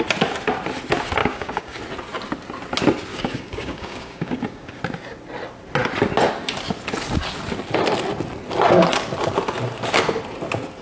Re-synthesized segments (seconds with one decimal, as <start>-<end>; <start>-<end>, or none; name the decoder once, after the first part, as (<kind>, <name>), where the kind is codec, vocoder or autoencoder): 1.2-1.8 (codec, DAC); 3.1-4.8